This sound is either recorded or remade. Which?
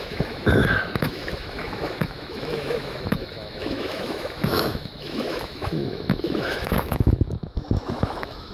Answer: remade